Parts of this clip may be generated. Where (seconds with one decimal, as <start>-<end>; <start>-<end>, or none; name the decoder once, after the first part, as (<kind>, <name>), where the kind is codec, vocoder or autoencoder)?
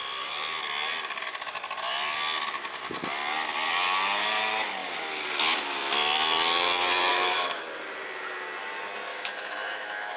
7.1-7.6 (autoencoder, DAC-VAE); 9.1-10.2